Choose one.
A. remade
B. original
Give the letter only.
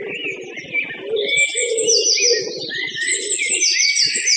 B